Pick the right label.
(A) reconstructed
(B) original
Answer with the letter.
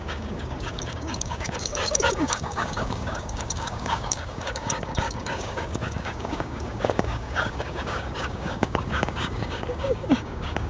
A